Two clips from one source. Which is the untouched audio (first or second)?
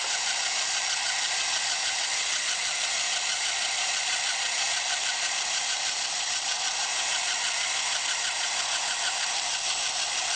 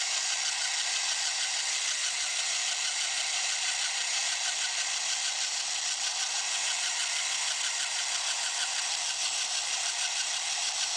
second